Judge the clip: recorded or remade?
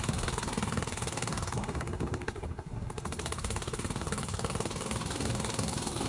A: remade